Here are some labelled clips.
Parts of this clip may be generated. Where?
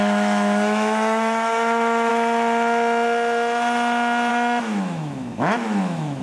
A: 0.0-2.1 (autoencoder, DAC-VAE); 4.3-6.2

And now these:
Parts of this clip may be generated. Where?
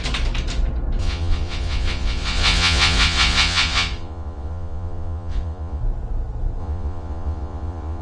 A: 1.0-5.8 (vocoder, Vocos); 6.6-8.0